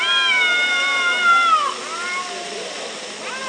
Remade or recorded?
recorded